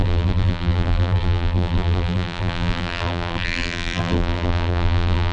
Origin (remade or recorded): remade